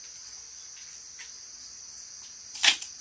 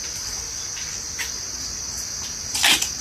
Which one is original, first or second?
first